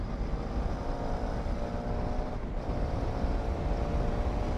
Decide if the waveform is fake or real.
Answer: real